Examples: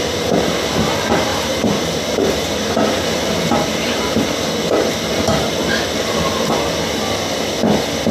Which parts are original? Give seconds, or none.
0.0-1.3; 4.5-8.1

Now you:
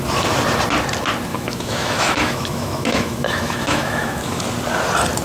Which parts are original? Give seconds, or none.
0.0-1.3; 4.4-5.2

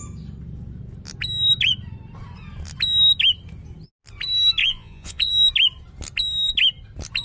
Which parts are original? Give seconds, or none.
0.0-4.6; 5.3-7.2

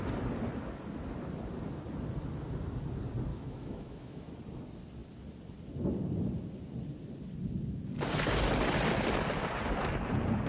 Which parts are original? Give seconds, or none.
0.0-3.3; 4.3-10.5

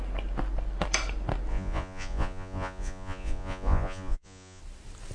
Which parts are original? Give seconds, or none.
0.0-1.5; 4.6-5.1

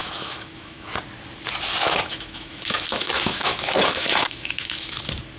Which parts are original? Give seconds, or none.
0.9-1.8; 5.0-5.4

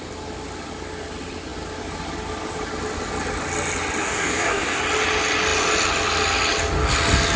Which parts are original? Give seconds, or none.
0.0-4.0; 4.8-7.4

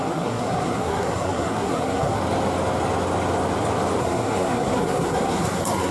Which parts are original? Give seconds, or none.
2.2-4.0